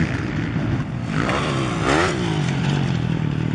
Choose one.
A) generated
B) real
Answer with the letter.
B